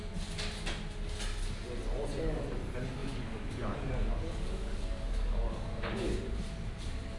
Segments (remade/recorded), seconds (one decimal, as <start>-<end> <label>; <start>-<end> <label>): 0.0-3.0 recorded; 3.0-6.1 remade; 6.1-7.2 recorded